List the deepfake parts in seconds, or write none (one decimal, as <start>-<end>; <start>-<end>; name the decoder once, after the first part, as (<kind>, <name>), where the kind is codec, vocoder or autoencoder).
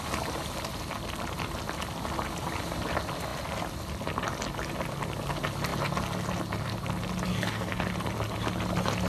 7.3-7.8 (codec, SNAC)